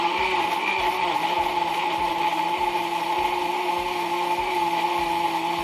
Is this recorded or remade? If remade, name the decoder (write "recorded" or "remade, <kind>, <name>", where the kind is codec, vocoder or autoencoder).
recorded